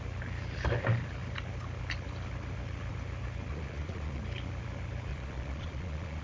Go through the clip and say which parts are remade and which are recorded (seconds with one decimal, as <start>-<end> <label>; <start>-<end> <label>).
0.0-3.5 recorded; 3.5-4.2 remade; 4.2-5.1 recorded; 5.1-6.2 remade